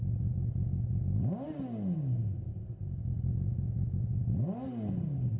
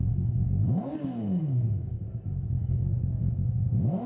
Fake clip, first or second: second